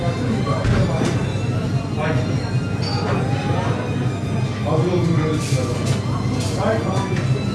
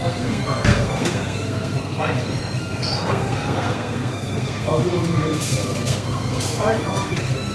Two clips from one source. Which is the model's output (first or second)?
second